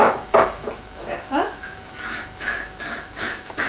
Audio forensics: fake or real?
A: fake